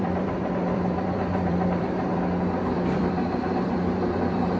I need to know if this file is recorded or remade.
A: remade